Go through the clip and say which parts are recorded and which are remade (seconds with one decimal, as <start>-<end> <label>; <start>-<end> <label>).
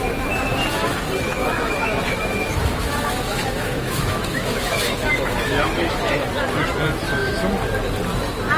0.0-1.4 recorded; 1.4-6.0 remade; 6.0-8.6 recorded